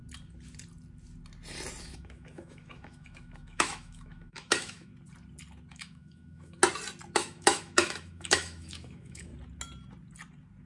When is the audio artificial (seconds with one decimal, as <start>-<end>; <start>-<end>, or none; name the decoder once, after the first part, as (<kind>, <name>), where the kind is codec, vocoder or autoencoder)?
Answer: 1.8-4.9 (autoencoder, DAC-VAE); 5.7-6.6; 7.1-9.3